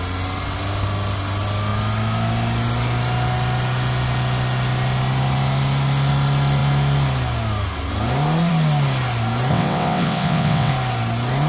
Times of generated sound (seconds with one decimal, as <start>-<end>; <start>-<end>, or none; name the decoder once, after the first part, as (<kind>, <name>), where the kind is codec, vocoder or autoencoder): 9.5-10.7 (vocoder, WaveNeXt)